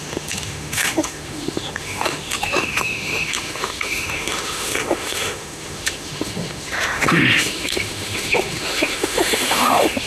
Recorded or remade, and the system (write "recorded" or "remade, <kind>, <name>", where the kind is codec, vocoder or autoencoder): remade, autoencoder, DAC-VAE